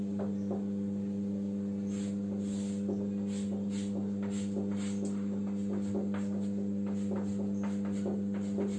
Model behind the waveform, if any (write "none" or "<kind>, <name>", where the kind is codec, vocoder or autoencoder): none